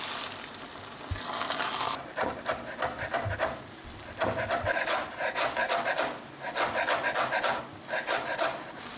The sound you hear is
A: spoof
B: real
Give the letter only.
B